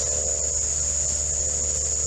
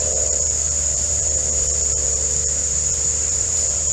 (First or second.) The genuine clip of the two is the first